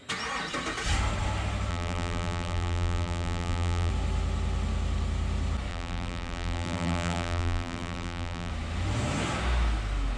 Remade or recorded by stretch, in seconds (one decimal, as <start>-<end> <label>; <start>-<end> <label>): 0.0-1.7 recorded; 1.7-3.9 remade; 3.9-5.7 recorded; 5.7-8.5 remade; 8.5-10.2 recorded